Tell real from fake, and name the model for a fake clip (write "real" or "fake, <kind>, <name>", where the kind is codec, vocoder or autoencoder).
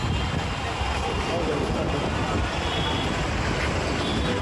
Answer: real